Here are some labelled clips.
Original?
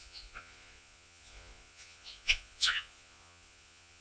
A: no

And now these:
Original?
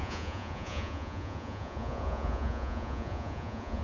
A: no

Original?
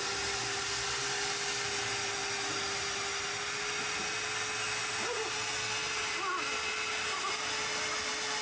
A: yes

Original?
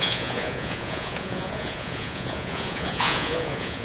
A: no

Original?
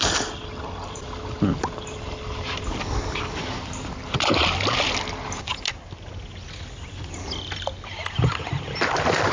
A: yes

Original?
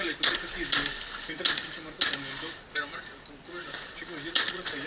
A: yes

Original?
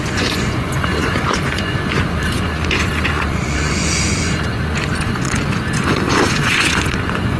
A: no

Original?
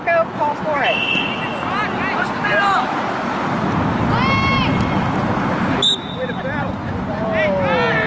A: yes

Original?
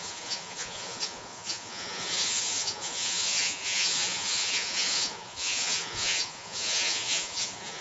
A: no